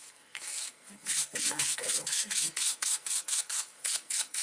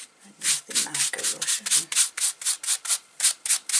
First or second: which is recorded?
second